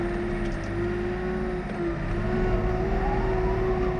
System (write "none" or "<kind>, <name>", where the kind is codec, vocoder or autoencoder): none